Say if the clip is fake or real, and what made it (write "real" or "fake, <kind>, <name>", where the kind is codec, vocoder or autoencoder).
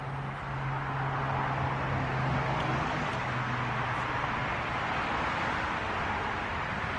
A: real